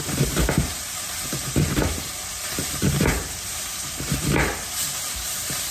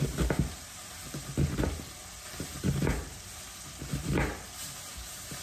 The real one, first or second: second